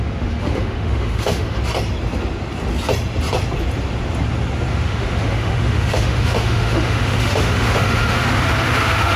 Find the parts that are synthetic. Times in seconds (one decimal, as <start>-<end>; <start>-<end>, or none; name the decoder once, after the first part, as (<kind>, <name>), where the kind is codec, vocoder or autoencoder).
0.0-1.6 (autoencoder, DAC-VAE); 4.7-9.2